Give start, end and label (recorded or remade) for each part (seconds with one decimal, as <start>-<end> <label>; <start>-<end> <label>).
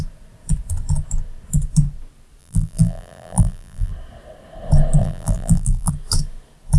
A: 0.0-2.4 recorded; 2.4-3.9 remade; 3.9-5.0 recorded; 5.0-5.9 remade; 5.9-6.8 recorded